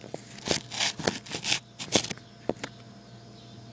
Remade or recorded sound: recorded